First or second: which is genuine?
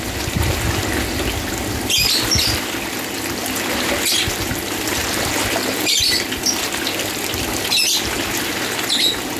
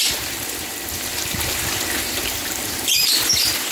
first